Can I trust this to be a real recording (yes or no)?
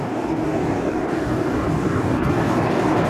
no